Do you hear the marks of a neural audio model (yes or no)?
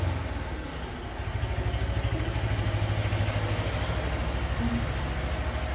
no